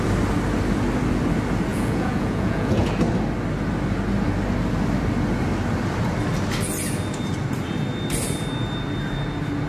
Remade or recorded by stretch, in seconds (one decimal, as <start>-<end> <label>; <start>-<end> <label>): 0.0-1.7 recorded; 1.7-2.9 remade; 2.9-9.7 recorded